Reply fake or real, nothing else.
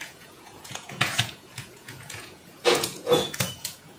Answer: fake